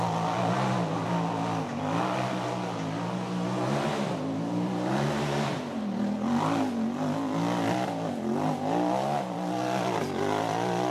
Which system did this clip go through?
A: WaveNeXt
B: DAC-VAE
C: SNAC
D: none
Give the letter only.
D